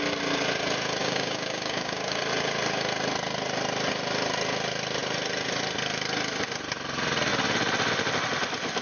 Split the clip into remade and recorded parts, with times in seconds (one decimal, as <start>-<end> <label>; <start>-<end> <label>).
0.0-1.0 recorded; 1.0-2.2 remade; 2.2-8.8 recorded